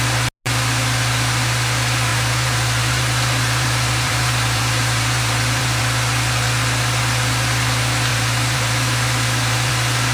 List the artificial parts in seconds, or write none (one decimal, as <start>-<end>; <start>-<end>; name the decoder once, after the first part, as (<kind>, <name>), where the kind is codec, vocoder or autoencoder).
2.1-5.8 (vocoder, BigVGAN v2); 8.1-9.7